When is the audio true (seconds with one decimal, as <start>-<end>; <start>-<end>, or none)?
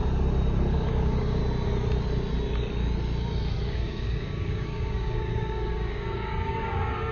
0.0-0.7; 1.4-3.7